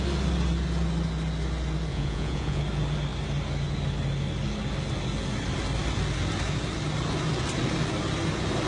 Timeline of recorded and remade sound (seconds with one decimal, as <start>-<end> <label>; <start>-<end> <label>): 0.0-1.9 recorded; 1.9-2.6 remade; 2.6-8.7 recorded